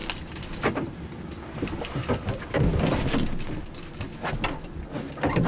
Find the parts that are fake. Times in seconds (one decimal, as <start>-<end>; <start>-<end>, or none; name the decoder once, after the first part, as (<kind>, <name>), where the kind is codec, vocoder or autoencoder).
none